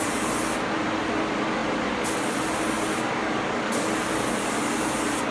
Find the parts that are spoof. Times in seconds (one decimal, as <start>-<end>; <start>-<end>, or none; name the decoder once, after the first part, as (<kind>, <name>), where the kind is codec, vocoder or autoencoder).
2.9-3.9 (codec, DAC)